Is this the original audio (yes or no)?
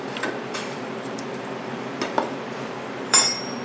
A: no